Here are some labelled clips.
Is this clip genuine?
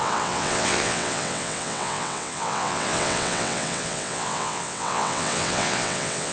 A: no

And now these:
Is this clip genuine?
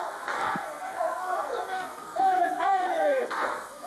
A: no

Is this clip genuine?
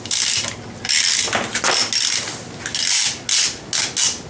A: yes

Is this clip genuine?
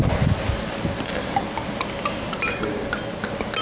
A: yes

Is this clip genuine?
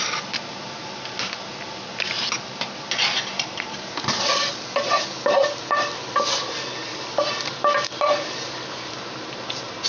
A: yes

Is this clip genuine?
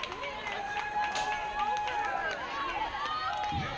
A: yes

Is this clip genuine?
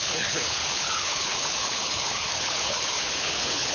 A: no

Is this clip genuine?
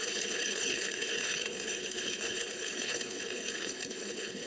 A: no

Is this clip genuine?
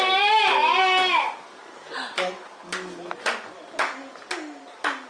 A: yes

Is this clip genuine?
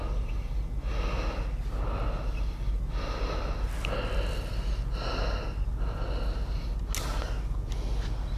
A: yes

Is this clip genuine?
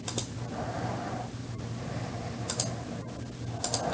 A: yes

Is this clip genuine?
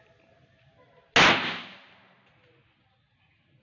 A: yes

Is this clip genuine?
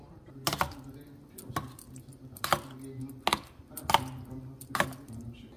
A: yes